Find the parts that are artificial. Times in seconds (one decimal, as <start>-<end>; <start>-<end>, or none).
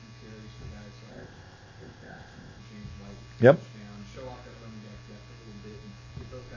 1.1-2.6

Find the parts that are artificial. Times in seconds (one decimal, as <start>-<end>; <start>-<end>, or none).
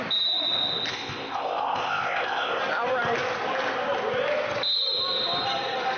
0.9-2.6